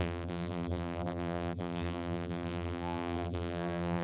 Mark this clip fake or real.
fake